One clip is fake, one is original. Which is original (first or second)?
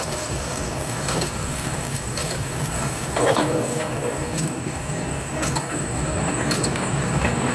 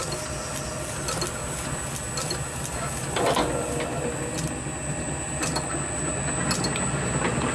second